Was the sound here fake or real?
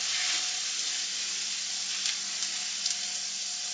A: real